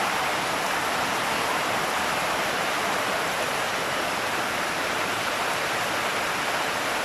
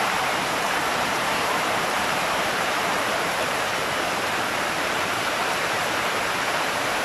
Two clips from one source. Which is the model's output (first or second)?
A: second